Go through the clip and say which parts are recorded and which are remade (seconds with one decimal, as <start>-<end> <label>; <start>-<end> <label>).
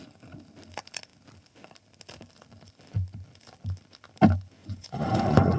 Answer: 0.0-4.6 recorded; 4.6-5.6 remade